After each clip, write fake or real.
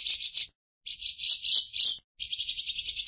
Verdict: real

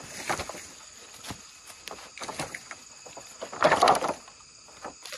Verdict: real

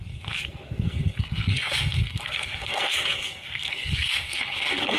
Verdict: fake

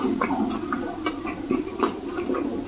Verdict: real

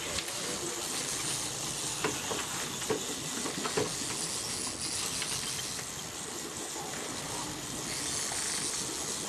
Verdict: real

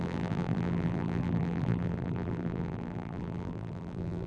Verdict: fake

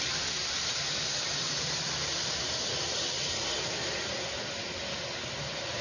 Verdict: real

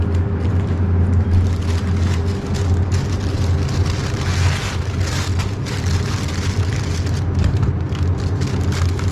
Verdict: real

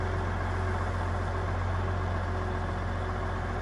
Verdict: real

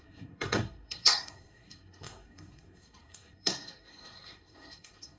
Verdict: fake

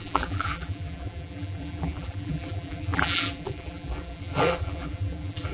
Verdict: fake